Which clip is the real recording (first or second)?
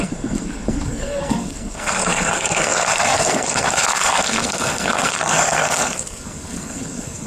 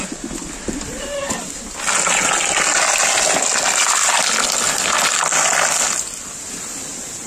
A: second